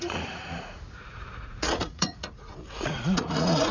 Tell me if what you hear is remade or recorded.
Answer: remade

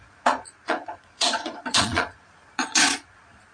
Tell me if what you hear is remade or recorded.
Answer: remade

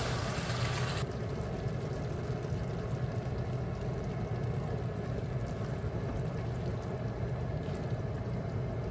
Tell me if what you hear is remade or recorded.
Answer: recorded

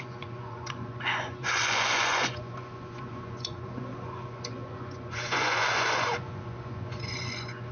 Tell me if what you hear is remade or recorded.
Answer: remade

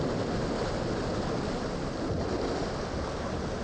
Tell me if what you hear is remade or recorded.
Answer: recorded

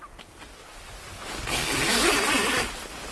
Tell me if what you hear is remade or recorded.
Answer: recorded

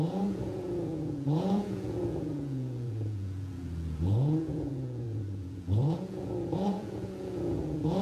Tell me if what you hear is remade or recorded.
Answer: remade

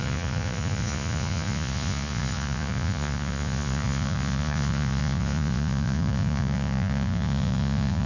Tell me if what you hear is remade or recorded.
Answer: remade